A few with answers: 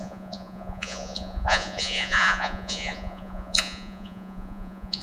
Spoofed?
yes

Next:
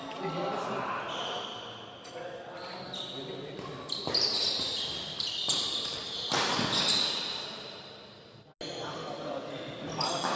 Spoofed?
no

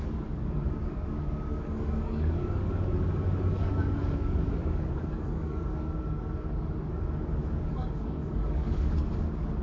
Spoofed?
yes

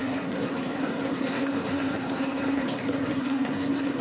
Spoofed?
yes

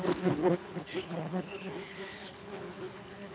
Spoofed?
yes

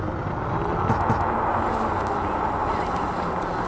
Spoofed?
no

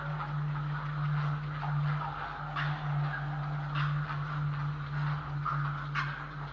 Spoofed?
no